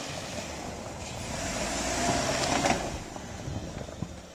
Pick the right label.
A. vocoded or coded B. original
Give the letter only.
B